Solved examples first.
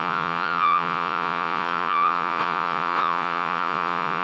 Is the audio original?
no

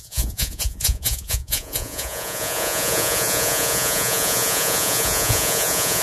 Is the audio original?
no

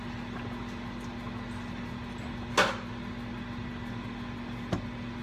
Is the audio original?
yes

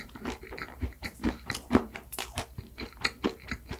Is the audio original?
no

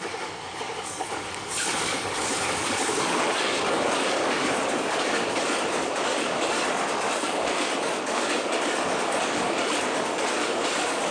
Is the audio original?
no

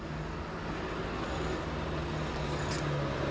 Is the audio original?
yes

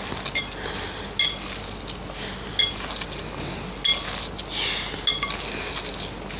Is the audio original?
yes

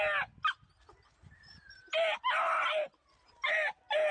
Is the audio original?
yes